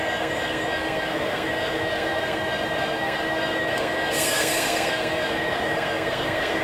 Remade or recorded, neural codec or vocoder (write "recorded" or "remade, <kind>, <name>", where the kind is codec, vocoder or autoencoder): remade, codec, SNAC